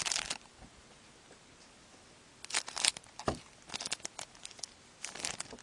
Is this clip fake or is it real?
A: real